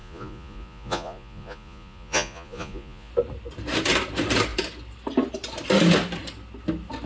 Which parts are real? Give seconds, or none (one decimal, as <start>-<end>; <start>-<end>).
3.1-7.1